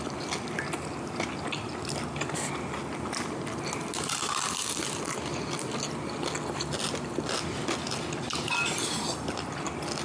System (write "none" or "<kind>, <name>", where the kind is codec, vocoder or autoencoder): none